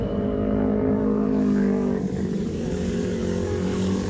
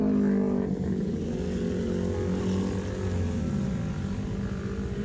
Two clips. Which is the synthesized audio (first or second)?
first